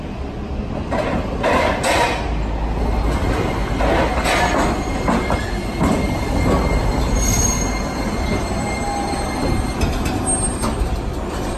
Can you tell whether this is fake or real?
real